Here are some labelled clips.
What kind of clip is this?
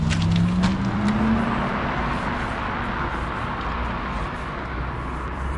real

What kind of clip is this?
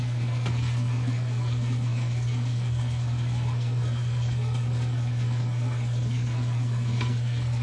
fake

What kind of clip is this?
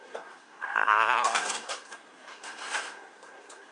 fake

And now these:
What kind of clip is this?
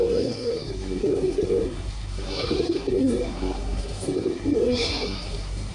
fake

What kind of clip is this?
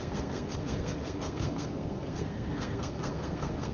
fake